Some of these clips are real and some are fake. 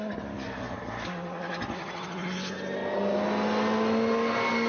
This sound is real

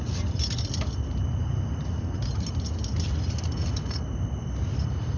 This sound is real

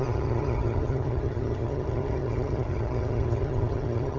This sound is fake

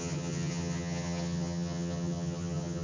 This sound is fake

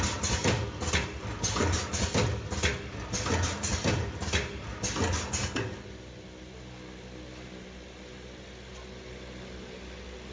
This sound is real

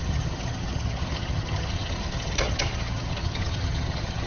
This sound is fake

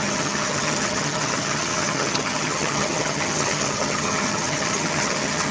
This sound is fake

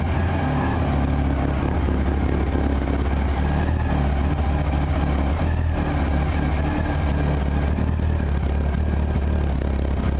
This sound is real